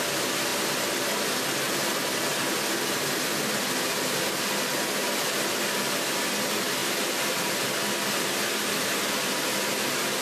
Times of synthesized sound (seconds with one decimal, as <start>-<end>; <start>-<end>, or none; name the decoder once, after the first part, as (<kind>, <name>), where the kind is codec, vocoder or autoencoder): 6.8-7.4 (vocoder, BigVGAN v2)